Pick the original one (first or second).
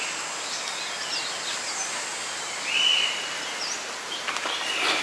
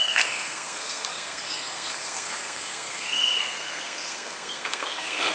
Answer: first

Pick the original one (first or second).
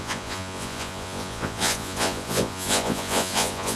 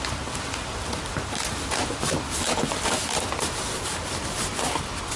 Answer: second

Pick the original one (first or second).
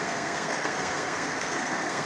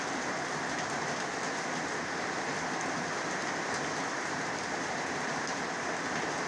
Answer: second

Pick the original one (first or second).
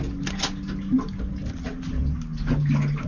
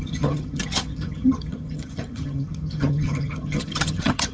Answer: first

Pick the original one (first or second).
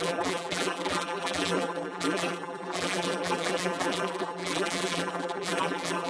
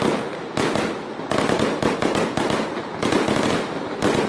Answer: second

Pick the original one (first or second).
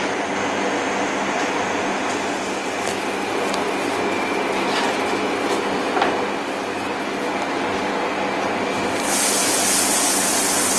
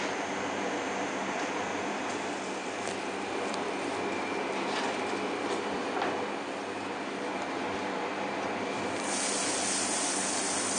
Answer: first